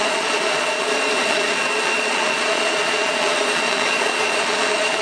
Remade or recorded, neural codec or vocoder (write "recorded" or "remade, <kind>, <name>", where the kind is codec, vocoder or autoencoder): remade, vocoder, Vocos